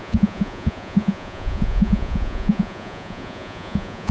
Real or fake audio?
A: fake